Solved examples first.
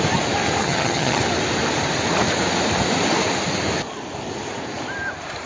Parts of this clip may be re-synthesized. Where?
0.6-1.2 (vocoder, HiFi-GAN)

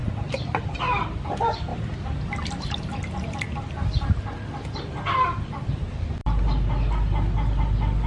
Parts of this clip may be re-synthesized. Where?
0.5-1.7 (vocoder, BigVGAN v2); 4.1-6.2

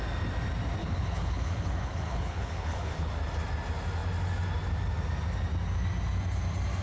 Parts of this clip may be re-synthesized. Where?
0.8-3.1 (codec, HILCodec)

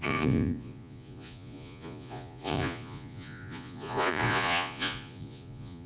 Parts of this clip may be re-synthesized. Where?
0.0-5.9 (vocoder, Vocos)

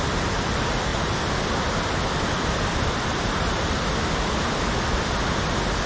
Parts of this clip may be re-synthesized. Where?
0.9-4.4 (vocoder, BigVGAN v2)